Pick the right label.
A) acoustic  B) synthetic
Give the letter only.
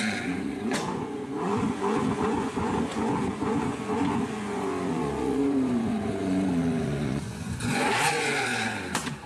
B